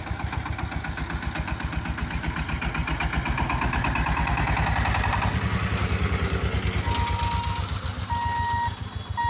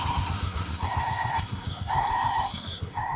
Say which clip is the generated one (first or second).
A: second